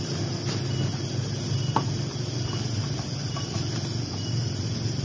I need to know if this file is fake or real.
real